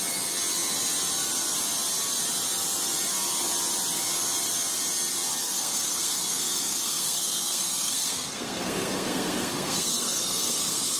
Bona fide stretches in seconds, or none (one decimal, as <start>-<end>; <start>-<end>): 0.0-5.4